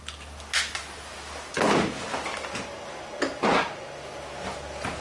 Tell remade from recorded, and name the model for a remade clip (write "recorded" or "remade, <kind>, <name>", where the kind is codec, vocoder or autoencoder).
recorded